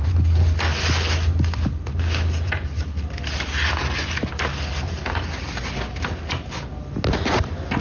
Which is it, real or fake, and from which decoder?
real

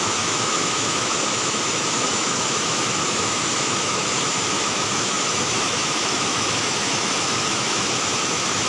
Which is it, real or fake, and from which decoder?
fake, autoencoder, DAC-VAE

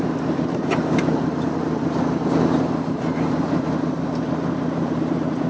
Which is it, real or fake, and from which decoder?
fake, vocoder, BigVGAN v2